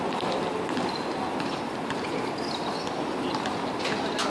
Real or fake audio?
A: real